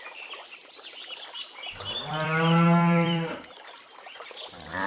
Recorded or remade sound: remade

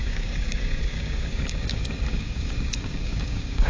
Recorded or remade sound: remade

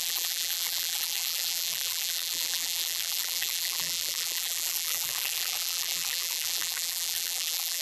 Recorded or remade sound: remade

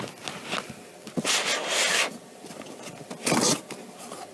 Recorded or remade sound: recorded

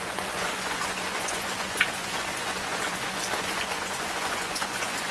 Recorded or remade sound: remade